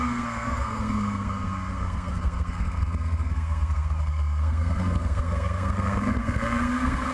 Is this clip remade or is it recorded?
remade